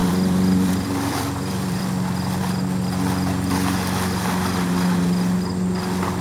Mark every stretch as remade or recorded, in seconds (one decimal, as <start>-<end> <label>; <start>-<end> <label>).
0.0-1.8 remade; 1.8-6.2 recorded